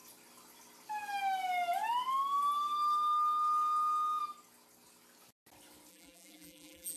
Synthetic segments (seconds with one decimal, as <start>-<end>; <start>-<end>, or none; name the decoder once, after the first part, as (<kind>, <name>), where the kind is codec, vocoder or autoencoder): 5.9-7.0 (vocoder, BigVGAN v2)